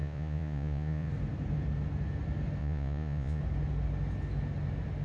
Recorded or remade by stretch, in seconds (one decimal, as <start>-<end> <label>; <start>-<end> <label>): 0.0-1.1 remade; 1.1-2.6 recorded; 2.6-3.4 remade; 3.4-5.0 recorded